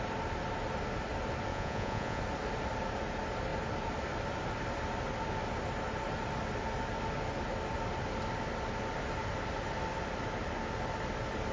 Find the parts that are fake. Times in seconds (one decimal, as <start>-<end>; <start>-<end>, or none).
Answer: 1.5-2.2